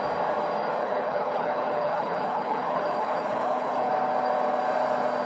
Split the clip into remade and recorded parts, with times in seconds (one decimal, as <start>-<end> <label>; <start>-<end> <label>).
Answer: 0.0-0.8 recorded; 0.8-3.9 remade; 3.9-5.3 recorded